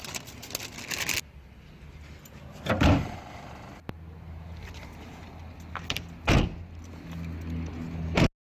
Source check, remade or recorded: recorded